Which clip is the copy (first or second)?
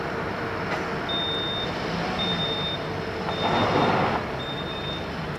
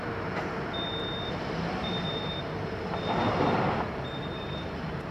second